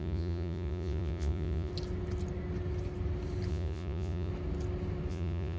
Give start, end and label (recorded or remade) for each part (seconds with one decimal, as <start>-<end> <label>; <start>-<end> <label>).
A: 0.0-1.7 remade; 1.7-3.5 recorded; 3.5-4.3 remade; 4.3-5.1 recorded; 5.1-5.6 remade